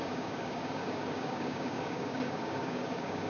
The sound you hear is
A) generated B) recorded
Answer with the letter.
A